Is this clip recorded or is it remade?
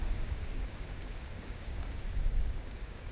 remade